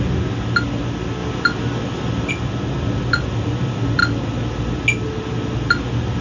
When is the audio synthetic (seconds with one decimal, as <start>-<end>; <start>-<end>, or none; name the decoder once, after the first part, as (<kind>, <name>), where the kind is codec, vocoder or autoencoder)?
none

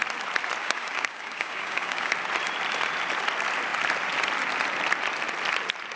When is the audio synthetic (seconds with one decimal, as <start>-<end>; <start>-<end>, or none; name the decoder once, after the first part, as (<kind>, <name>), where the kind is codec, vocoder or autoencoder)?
0.6-2.1 (codec, DAC)

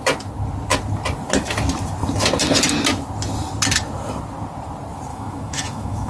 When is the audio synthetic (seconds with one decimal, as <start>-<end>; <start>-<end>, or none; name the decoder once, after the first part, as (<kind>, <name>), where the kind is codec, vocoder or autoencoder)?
5.1-6.1 (autoencoder, DAC-VAE)

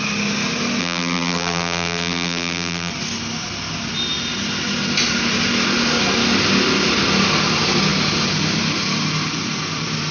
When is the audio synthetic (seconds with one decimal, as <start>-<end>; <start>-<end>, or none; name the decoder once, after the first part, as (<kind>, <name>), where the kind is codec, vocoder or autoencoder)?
0.8-2.9 (vocoder, BigVGAN v2)

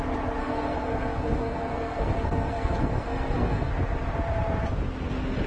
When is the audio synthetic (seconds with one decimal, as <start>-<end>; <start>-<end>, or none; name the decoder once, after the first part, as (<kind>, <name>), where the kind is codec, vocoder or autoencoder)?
0.4-3.7 (codec, SNAC)

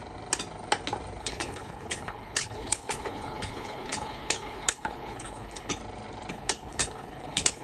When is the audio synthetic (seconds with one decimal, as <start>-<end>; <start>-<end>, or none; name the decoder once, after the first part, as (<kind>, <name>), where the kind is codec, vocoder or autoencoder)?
1.2-5.8 (codec, HILCodec); 6.3-7.6

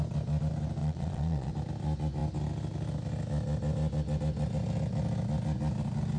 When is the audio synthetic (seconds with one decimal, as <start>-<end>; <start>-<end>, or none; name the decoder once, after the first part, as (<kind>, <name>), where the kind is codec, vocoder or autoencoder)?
0.8-1.5 (vocoder, Vocos)

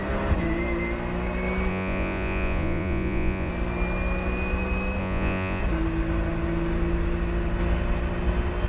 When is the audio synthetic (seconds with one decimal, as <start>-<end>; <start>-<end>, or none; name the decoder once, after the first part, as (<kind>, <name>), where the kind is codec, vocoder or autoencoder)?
1.7-3.5 (vocoder, Vocos); 5.0-5.6